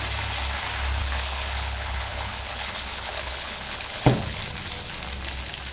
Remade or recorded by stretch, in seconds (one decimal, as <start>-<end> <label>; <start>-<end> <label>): 0.0-1.0 recorded; 1.0-4.4 remade; 4.4-5.7 recorded

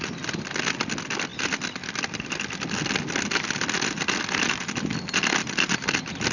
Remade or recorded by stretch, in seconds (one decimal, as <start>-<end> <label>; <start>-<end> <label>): 0.0-6.3 recorded

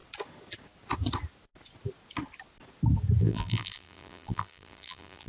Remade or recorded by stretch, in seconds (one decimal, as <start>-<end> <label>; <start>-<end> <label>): 0.0-3.2 recorded; 3.2-5.3 remade